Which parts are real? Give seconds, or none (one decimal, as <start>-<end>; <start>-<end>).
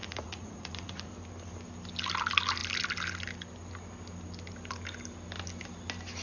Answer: 1.1-6.2